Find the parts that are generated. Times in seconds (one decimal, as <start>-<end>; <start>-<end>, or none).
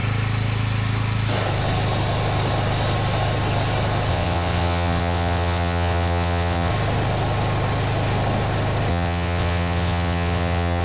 4.1-6.7; 8.9-10.8